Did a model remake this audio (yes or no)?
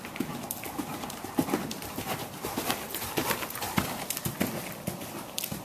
no